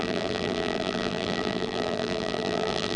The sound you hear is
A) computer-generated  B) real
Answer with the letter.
A